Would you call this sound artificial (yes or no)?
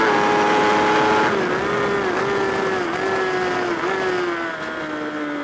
no